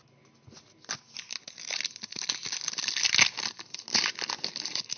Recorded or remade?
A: recorded